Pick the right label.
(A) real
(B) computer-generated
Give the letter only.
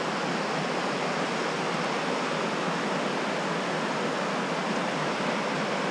A